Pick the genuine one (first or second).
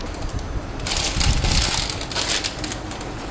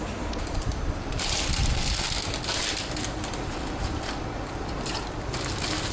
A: first